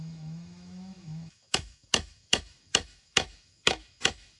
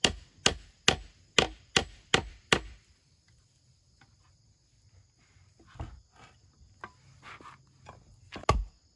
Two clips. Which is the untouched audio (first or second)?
second